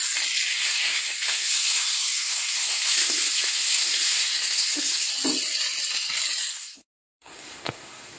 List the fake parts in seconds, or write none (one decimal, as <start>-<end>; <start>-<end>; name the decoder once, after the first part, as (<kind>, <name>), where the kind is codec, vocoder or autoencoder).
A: 0.5-5.1 (codec, SNAC); 6.5-8.2

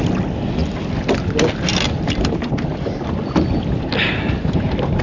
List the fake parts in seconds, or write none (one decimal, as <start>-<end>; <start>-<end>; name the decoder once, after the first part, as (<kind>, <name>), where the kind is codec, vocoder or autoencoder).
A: none

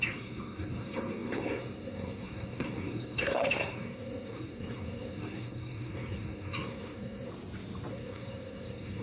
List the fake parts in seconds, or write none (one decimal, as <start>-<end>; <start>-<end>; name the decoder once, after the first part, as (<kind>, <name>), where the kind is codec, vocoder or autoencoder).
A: 0.0-7.3 (codec, SNAC); 7.9-9.0

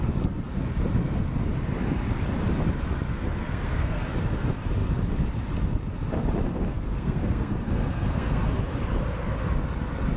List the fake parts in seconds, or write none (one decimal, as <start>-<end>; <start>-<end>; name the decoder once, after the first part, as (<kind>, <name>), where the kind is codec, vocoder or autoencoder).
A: 3.1-4.0 (codec, SNAC); 6.7-8.6

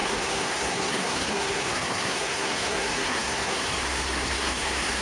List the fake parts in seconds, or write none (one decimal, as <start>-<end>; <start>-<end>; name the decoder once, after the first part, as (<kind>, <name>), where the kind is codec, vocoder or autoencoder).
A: 0.0-5.0 (codec, SNAC)

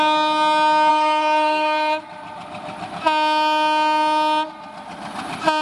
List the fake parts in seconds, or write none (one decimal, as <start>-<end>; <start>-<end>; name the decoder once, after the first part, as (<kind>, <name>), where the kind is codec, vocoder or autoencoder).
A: 0.9-2.0 (codec, SNAC)